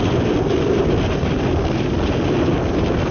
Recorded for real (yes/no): yes